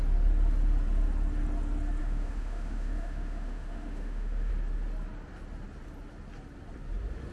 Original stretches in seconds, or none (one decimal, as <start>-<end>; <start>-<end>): 0.0-2.0; 4.5-7.3

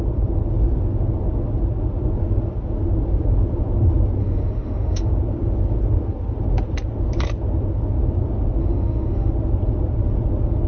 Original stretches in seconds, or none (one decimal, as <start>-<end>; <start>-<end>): 0.0-4.2; 5.1-8.6; 9.3-10.7